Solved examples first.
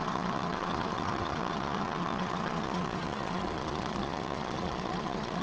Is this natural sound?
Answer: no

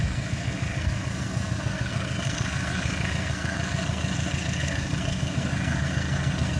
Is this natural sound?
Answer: no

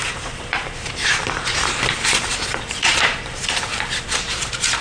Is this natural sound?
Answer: no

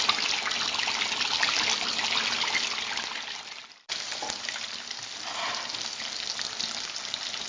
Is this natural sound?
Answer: yes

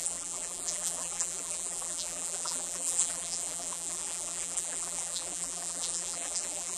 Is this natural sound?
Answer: no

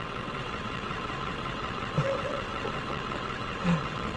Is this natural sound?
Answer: no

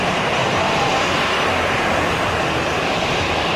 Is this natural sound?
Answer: no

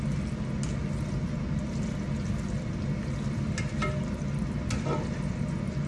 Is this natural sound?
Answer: yes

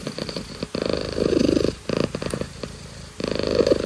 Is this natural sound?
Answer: no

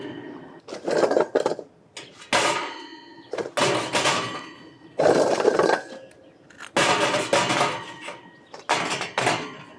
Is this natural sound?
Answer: yes